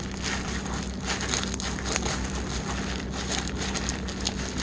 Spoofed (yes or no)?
no